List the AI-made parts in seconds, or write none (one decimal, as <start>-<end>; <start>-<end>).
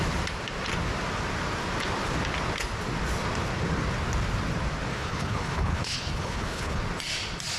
4.9-6.8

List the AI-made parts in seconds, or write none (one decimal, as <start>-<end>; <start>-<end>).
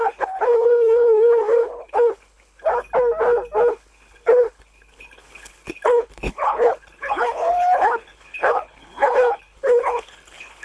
0.0-2.7; 3.7-10.6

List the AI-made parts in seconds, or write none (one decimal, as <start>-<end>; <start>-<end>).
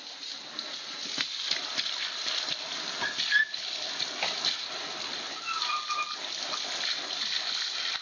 none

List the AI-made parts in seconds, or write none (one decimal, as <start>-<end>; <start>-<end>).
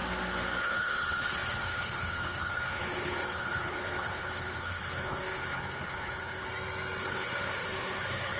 0.6-6.5; 7.0-8.4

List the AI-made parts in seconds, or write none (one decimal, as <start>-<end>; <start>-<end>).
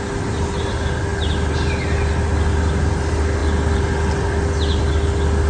none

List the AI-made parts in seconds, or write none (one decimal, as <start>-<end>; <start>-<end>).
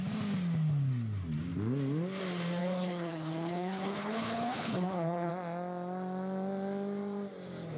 2.6-5.3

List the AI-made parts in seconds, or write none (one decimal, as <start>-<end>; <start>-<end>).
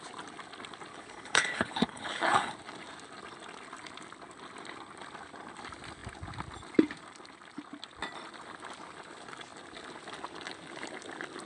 0.9-2.5